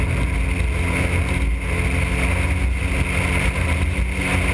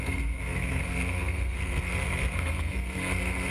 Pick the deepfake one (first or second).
second